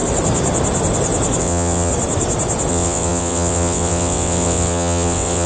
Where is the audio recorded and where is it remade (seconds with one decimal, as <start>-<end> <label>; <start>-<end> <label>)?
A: 0.0-1.4 recorded; 1.4-1.9 remade; 1.9-2.7 recorded; 2.7-5.5 remade